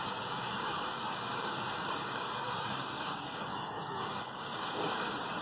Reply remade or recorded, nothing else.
remade